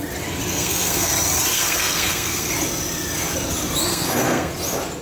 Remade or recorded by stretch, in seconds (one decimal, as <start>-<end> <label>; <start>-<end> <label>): 0.0-0.5 recorded; 0.5-1.1 remade; 1.1-1.5 recorded; 1.5-2.5 remade; 2.5-3.9 recorded; 3.9-4.5 remade; 4.5-5.0 recorded